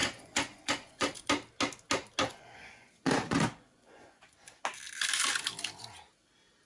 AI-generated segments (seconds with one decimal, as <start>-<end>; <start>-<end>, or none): 0.0-1.3; 2.2-4.6